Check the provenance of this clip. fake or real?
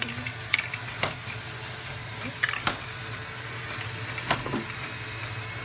real